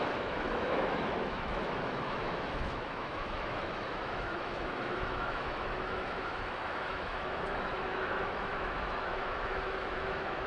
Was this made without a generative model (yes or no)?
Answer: no